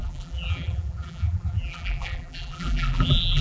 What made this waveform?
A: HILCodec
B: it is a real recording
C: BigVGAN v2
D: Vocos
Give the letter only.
C